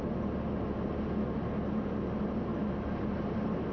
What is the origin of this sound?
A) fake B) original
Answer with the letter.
B